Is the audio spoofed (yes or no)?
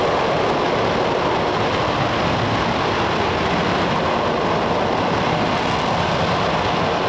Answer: no